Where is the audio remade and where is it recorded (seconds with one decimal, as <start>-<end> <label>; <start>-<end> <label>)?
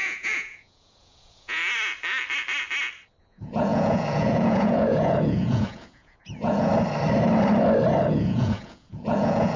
0.0-1.6 remade; 1.6-3.2 recorded; 3.2-6.7 remade; 6.7-8.0 recorded; 8.0-9.6 remade